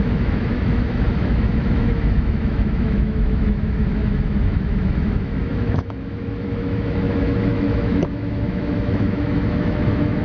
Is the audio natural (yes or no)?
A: no